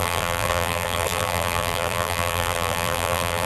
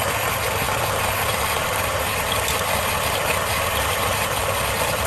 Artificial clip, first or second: first